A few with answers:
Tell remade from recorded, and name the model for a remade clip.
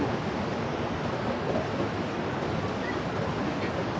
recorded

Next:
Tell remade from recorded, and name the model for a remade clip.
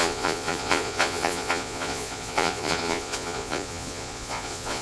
remade, vocoder, Vocos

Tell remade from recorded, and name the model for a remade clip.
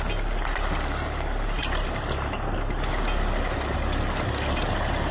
recorded